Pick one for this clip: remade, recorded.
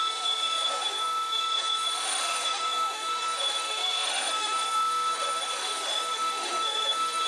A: remade